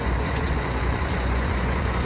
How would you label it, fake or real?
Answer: fake